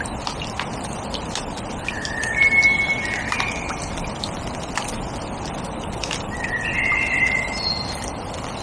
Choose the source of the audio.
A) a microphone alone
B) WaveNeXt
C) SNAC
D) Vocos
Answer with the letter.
A